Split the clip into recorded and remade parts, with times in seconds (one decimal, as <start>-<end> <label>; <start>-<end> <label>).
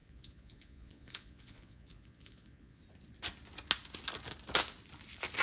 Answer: 0.0-2.8 remade; 2.8-5.4 recorded